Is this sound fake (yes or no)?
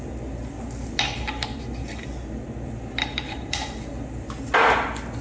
no